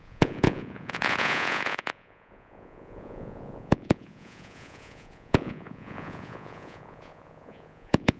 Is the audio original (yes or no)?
no